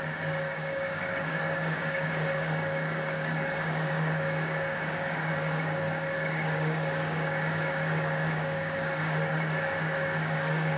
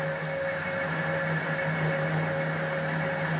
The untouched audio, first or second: second